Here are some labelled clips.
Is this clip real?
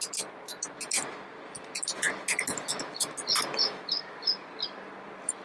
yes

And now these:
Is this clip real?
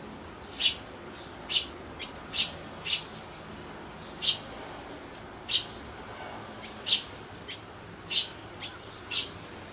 yes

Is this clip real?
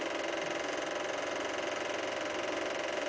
yes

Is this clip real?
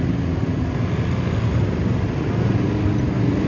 yes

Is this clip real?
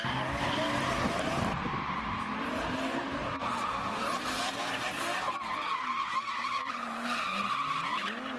yes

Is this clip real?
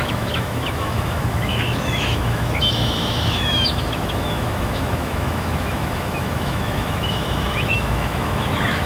no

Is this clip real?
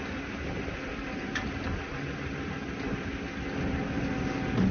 yes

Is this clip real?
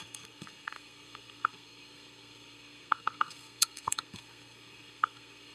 no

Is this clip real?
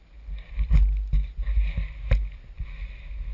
yes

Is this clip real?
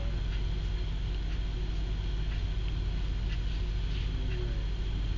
yes